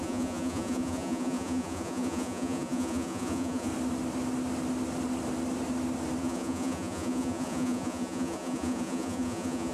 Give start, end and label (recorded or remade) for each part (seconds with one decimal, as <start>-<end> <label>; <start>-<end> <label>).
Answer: 0.0-3.7 remade; 3.7-6.2 recorded; 6.2-9.7 remade